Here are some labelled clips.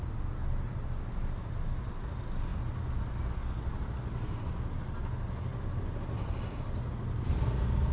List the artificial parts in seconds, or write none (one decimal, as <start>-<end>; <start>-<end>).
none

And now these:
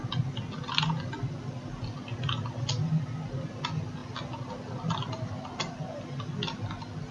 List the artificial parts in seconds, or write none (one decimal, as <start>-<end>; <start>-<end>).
none

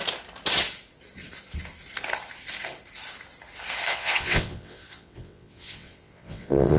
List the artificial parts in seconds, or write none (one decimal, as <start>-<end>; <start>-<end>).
3.9-6.8

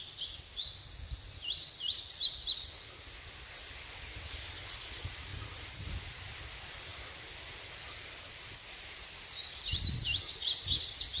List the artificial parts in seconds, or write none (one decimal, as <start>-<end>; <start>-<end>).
none

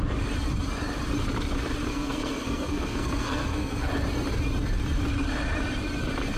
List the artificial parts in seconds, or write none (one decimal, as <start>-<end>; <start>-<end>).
1.9-3.9